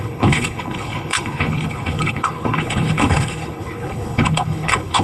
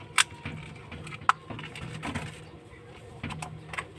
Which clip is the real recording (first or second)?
second